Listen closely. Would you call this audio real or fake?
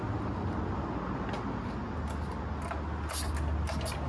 real